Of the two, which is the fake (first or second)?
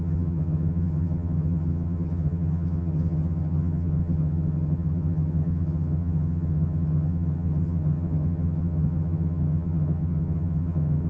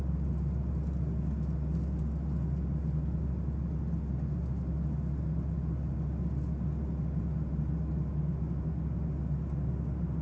first